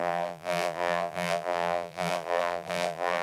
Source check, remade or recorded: remade